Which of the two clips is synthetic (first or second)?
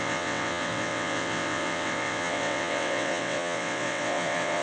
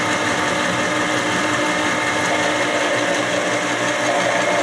first